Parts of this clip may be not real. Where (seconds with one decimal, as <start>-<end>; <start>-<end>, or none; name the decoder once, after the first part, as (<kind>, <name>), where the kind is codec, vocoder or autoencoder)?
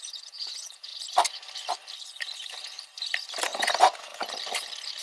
0.0-0.9 (vocoder, Vocos); 3.6-4.1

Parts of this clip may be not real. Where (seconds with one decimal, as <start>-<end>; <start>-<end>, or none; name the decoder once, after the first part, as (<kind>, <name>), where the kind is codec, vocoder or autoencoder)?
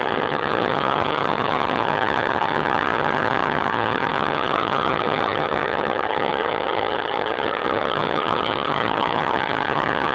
0.0-10.1 (vocoder, HiFi-GAN)